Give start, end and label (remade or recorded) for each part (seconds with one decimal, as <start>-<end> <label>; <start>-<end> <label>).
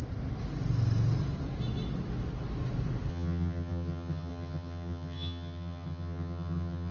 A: 0.0-3.1 recorded; 3.1-6.9 remade